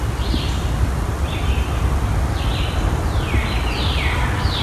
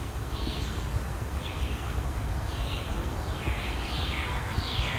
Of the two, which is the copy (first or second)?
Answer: second